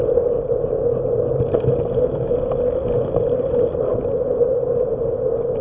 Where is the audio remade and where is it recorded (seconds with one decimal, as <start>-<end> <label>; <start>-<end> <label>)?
0.0-5.6 recorded